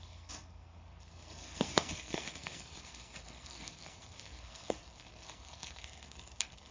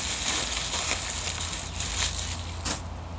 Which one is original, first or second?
second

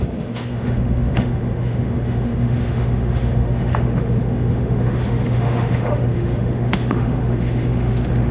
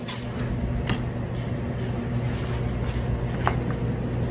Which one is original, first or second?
second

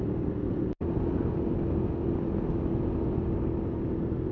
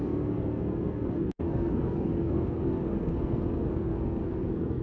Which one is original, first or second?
first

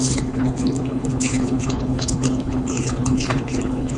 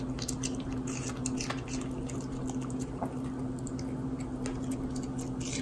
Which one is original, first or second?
second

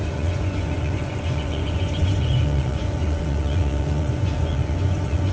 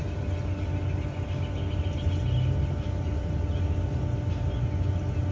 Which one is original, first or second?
second